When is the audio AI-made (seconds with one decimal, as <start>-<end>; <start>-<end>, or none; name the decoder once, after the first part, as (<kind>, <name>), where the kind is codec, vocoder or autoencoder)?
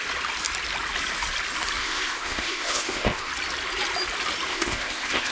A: 1.8-3.3 (codec, ZipCodec); 4.5-5.3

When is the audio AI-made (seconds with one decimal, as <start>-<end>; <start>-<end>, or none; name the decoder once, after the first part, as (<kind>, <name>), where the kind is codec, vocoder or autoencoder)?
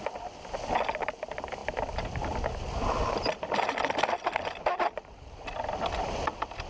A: none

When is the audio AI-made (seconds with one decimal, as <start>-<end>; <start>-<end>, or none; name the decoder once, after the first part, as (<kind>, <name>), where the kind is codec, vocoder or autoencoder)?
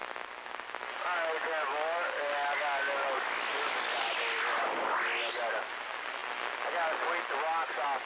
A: none